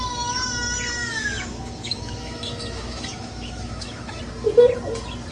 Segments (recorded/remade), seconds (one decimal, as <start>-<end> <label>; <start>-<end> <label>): 0.0-1.0 recorded; 1.0-4.2 remade; 4.2-5.3 recorded